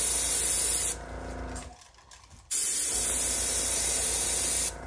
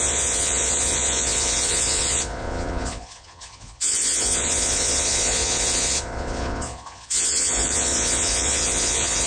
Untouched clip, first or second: first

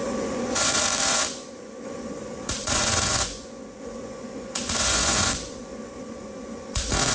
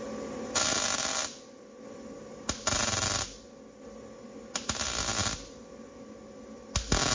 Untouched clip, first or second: second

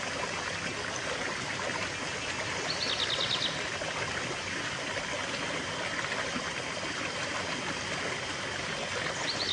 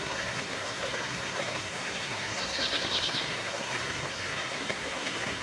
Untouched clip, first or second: first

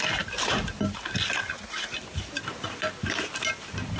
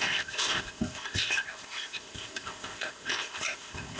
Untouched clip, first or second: first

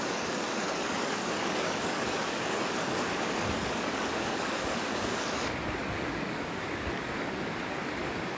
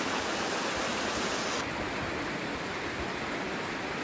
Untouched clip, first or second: second